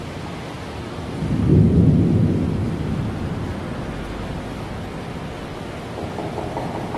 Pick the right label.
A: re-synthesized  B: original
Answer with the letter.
B